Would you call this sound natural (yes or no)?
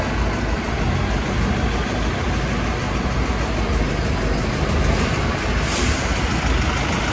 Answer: yes